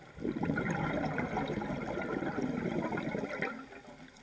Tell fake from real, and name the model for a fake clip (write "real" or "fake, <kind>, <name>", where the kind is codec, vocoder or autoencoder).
real